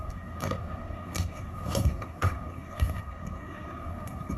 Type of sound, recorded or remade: remade